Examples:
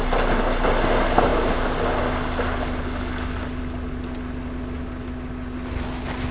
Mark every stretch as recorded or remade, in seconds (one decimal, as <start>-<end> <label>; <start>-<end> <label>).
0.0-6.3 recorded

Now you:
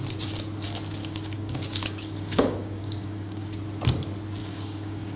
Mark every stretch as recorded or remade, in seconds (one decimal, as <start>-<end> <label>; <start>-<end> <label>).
0.0-1.0 recorded; 1.0-3.6 remade; 3.6-4.4 recorded; 4.4-5.2 remade

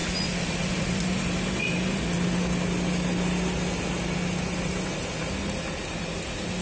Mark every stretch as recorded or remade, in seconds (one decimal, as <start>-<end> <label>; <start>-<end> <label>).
0.0-6.6 recorded